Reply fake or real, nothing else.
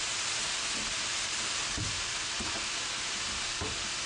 real